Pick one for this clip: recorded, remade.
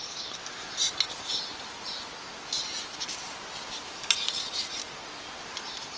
recorded